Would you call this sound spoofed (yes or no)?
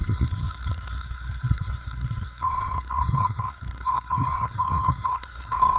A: yes